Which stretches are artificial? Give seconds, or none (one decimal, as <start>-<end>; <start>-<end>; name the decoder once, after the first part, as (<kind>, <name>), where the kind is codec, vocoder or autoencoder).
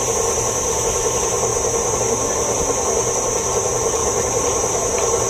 1.5-2.0 (vocoder, BigVGAN v2); 4.0-5.3